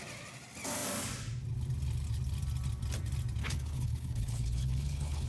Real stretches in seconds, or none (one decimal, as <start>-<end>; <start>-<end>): 0.0-3.4